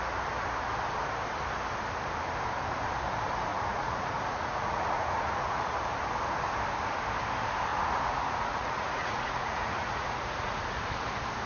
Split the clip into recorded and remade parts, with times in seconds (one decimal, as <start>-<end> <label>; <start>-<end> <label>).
0.0-3.5 recorded; 3.5-5.8 remade; 5.8-7.7 recorded; 7.7-10.6 remade; 10.6-11.5 recorded